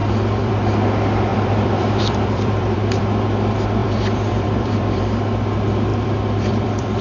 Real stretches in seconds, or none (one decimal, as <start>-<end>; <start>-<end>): 0.5-1.3; 3.0-3.8; 5.0-5.9